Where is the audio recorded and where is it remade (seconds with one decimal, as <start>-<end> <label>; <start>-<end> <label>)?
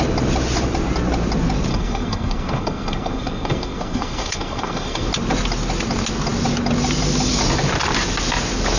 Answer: 0.0-1.7 recorded; 1.7-5.1 remade; 5.1-8.8 recorded